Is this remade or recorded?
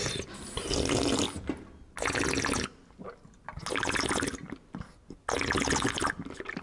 recorded